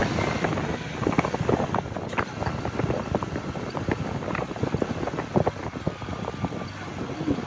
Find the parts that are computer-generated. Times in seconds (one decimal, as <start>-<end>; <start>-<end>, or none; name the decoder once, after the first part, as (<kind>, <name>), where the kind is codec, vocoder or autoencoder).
none